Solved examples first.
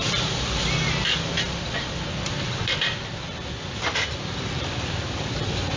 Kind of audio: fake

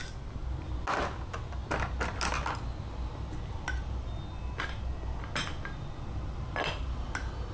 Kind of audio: real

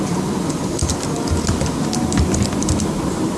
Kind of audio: fake